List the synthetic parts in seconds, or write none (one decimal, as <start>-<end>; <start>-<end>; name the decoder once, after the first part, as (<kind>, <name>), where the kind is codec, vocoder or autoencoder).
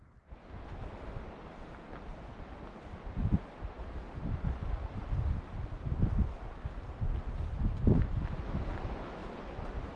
none